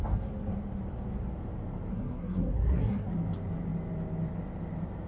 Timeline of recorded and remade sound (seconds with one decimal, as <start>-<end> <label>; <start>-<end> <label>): 0.0-1.9 recorded; 1.9-3.1 remade; 3.1-5.1 recorded